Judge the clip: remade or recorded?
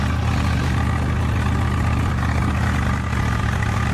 recorded